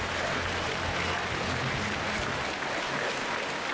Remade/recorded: recorded